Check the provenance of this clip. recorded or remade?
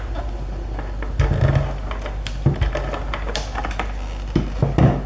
recorded